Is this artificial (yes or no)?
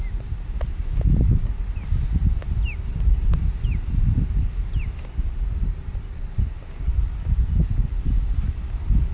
no